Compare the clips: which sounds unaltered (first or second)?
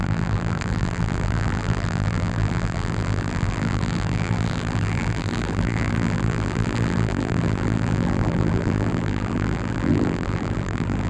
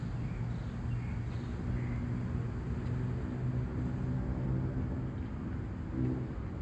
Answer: second